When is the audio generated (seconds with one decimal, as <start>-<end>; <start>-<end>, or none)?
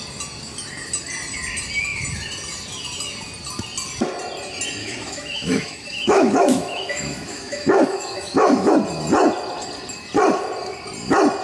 4.8-8.7